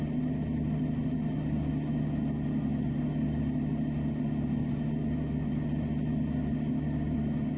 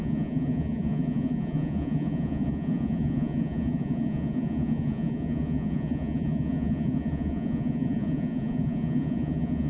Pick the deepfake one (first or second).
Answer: second